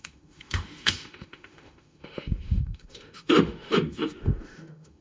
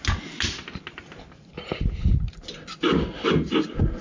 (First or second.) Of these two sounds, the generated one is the first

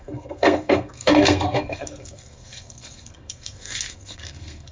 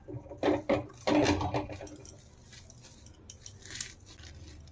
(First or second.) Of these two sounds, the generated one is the first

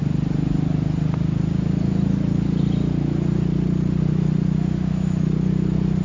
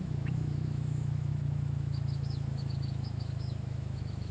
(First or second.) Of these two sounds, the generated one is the second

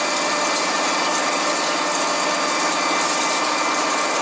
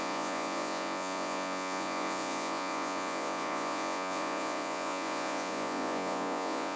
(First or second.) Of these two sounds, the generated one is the second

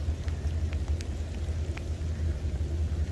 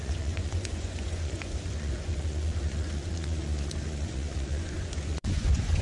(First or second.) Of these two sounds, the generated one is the second